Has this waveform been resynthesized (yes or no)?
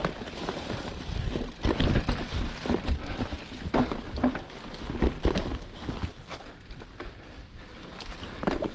yes